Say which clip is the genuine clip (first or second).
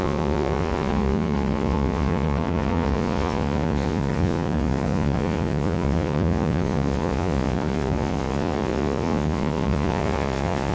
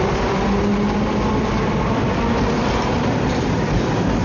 second